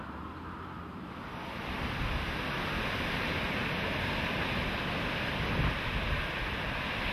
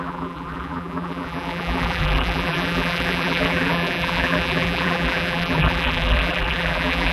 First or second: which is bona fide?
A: first